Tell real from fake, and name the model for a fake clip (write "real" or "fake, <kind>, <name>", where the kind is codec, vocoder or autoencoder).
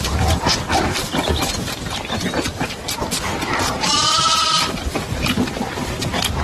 fake, vocoder, BigVGAN v2